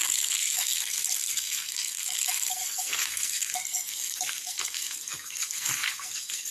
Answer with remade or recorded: remade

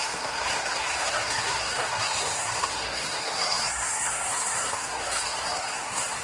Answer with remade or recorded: remade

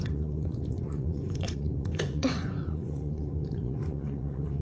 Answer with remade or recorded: remade